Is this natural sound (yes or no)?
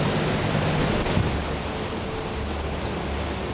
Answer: yes